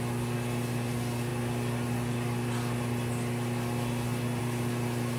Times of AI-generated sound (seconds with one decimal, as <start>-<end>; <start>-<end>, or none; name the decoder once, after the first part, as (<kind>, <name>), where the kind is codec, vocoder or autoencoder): none